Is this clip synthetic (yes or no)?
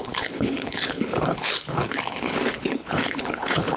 yes